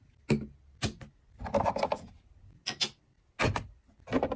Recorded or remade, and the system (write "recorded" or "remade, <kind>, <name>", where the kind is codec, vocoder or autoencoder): recorded